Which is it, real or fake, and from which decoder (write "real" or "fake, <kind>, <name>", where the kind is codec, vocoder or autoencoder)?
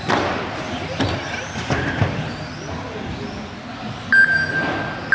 real